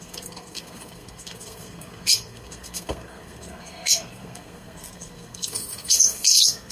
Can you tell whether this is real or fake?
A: fake